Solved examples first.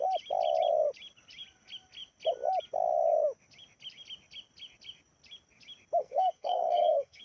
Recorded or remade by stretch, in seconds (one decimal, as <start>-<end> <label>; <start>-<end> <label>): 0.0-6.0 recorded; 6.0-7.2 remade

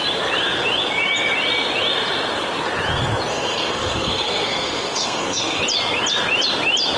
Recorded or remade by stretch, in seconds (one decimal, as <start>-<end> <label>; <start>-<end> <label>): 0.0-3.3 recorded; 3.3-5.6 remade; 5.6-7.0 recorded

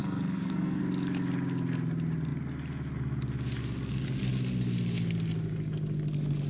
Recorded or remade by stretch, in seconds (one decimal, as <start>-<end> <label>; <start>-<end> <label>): 0.0-0.8 remade; 0.8-6.5 recorded

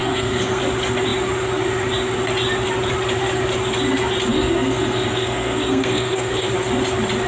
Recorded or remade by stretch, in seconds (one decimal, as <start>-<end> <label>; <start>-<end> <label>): 0.0-0.6 remade; 0.6-4.3 recorded; 4.3-6.5 remade; 6.5-7.3 recorded